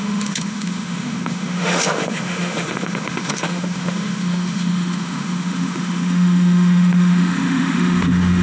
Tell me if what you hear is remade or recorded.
remade